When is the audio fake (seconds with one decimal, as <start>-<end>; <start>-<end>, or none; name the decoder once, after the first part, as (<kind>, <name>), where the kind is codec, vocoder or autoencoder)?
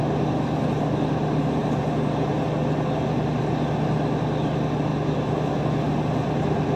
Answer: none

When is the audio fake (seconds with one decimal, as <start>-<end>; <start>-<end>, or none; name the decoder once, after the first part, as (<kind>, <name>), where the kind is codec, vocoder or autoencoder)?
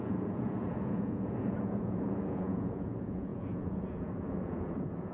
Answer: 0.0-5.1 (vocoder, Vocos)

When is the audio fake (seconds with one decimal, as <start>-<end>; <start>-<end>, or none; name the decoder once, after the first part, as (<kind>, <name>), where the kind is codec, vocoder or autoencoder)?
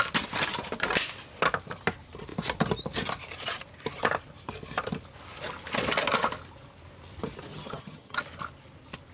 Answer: 7.5-8.2 (vocoder, HiFi-GAN)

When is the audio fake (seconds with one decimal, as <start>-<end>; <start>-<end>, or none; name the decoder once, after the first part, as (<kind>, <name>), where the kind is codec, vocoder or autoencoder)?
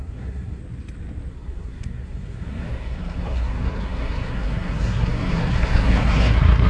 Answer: 0.0-0.6 (codec, SNAC); 1.3-6.7